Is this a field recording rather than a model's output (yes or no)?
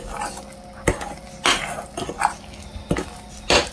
yes